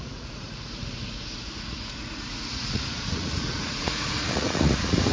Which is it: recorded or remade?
remade